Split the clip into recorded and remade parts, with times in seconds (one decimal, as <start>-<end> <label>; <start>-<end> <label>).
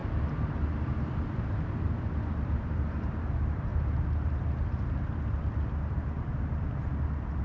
0.0-3.7 remade; 3.7-7.4 recorded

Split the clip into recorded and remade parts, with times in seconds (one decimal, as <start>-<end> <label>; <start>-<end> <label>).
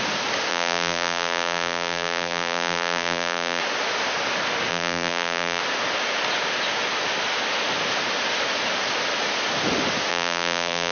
0.0-0.5 recorded; 0.5-3.6 remade; 3.6-4.7 recorded; 4.7-5.6 remade; 5.6-10.1 recorded; 10.1-10.9 remade